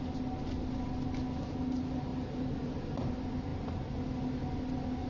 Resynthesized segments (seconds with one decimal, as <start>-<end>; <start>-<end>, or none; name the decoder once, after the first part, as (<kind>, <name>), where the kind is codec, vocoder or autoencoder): 2.1-3.1 (vocoder, BigVGAN v2)